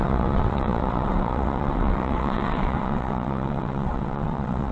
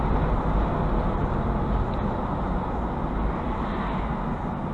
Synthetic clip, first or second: first